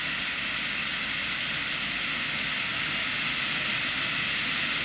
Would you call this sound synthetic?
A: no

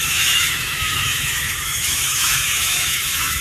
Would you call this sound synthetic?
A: yes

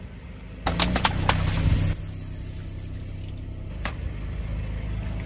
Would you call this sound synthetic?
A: no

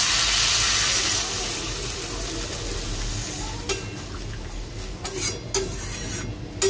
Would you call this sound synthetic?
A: no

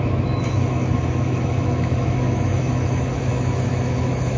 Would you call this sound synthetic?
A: yes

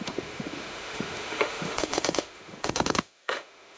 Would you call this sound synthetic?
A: yes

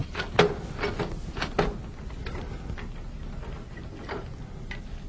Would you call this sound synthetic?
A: no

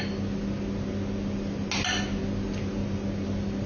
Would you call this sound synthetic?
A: no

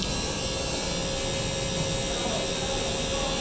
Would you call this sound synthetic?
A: no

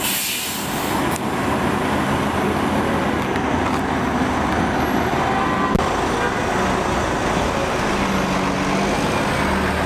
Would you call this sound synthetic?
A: no